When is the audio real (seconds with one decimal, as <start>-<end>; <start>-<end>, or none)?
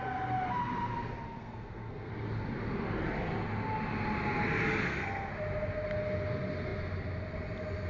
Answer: 0.0-1.4; 2.1-4.8; 5.3-7.9